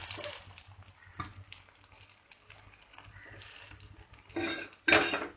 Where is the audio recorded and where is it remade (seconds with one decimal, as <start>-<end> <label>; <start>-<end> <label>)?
0.0-5.4 recorded